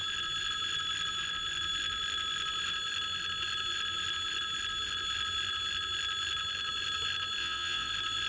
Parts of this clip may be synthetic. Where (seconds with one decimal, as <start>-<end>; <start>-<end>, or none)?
7.4-7.9